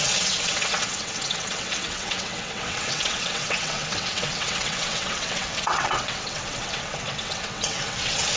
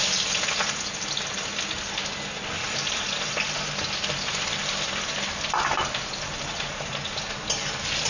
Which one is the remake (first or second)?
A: first